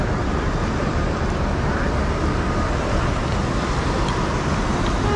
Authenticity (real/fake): real